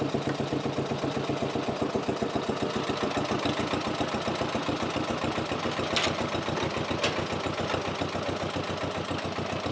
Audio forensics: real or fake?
real